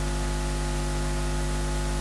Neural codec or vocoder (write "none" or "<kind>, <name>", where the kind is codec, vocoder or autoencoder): none